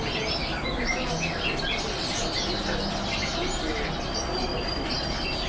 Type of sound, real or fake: real